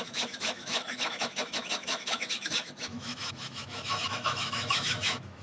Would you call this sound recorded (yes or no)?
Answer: no